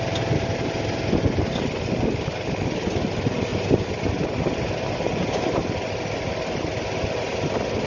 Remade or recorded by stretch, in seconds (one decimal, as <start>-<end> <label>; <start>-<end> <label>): 0.0-7.9 recorded